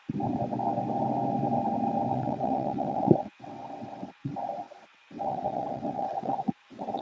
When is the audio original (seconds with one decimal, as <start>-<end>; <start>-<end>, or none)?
0.0-2.1; 4.3-4.9